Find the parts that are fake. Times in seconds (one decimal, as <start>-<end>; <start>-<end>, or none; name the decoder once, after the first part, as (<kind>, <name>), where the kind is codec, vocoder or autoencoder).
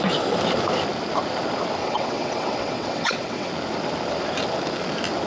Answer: 1.8-3.5 (vocoder, WaveNeXt)